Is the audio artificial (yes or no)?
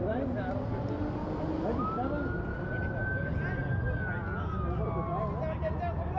no